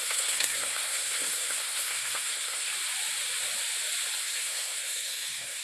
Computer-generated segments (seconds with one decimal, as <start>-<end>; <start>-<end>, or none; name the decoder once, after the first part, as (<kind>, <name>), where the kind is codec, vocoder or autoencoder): 0.0-2.7 (codec, SNAC); 4.2-5.6